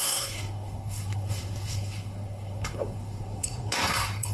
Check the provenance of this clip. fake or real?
fake